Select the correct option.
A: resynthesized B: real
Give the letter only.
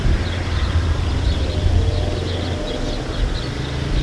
B